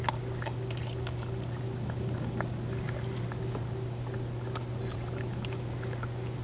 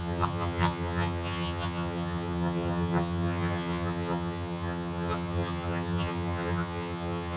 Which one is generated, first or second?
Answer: second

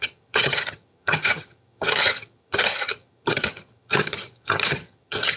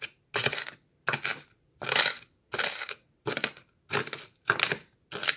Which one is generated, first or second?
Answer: first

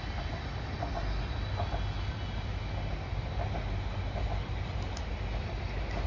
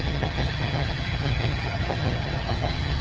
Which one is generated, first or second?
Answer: second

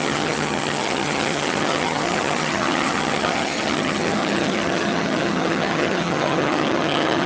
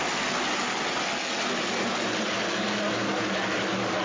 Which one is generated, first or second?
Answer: first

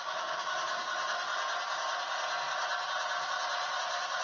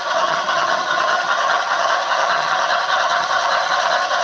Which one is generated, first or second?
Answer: second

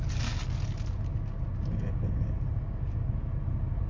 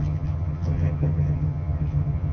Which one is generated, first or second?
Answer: second